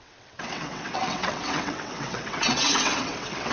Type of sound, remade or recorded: remade